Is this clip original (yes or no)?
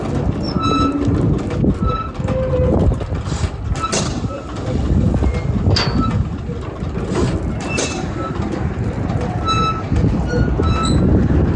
yes